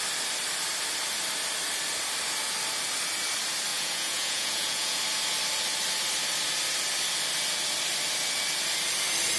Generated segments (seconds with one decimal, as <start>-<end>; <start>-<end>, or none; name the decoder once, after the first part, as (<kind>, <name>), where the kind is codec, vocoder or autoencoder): 3.7-5.0 (vocoder, Vocos)